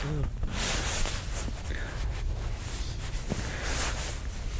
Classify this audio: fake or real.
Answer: real